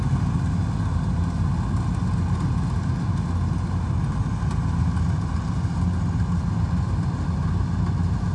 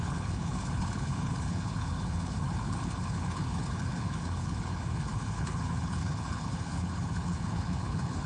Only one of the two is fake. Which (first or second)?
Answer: second